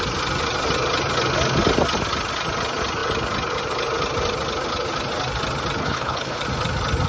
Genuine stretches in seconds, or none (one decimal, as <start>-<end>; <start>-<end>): 0.0-5.8; 6.4-7.1